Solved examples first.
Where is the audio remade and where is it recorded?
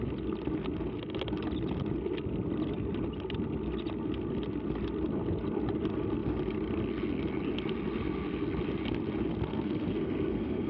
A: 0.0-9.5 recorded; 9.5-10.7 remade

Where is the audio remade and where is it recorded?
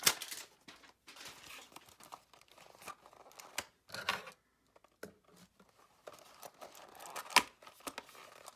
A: 0.0-8.6 recorded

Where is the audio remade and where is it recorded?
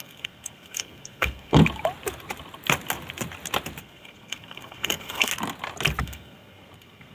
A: 0.0-1.6 remade; 1.6-3.8 recorded; 3.8-5.3 remade; 5.3-6.0 recorded; 6.0-7.1 remade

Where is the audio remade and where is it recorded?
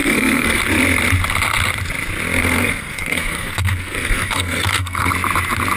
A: 0.0-0.6 remade; 0.6-2.4 recorded; 2.4-5.1 remade; 5.1-5.8 recorded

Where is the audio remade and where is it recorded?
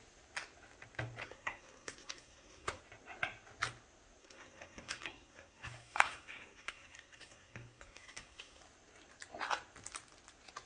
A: 0.0-1.2 recorded; 1.2-2.8 remade; 2.8-4.2 recorded; 4.2-8.6 remade; 8.6-10.7 recorded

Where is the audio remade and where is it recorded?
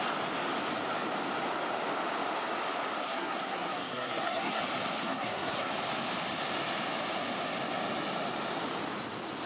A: 0.0-3.0 recorded; 3.0-4.6 remade; 4.6-5.0 recorded; 5.0-5.7 remade; 5.7-9.5 recorded